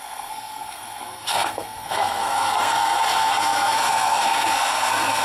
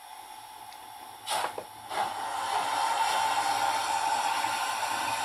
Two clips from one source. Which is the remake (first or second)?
first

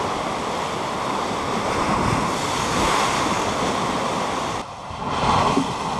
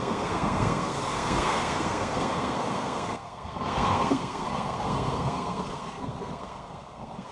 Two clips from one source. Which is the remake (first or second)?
second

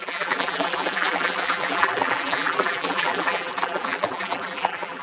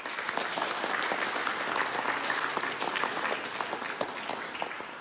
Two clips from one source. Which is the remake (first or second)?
first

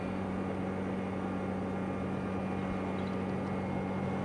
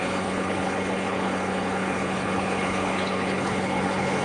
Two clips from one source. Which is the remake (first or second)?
second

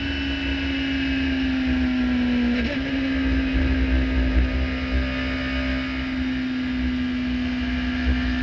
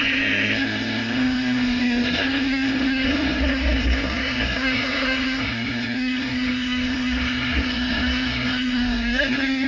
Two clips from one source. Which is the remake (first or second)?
second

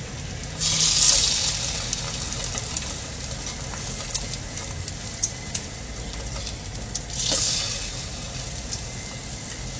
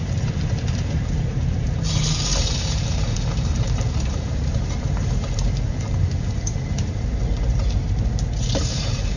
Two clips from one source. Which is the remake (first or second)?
second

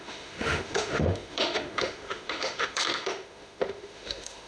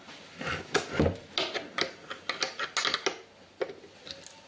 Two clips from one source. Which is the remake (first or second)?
first